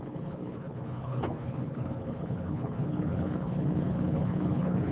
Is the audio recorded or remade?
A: remade